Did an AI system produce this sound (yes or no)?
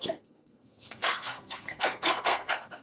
yes